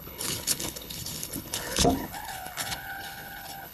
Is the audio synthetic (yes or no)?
yes